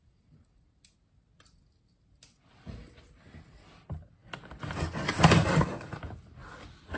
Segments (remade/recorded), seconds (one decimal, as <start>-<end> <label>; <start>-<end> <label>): 0.0-7.0 recorded

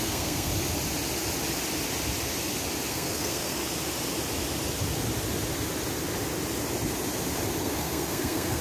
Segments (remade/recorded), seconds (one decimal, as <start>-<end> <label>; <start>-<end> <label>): 0.0-0.5 remade; 0.5-2.9 recorded; 2.9-3.6 remade; 3.6-7.6 recorded; 7.6-8.6 remade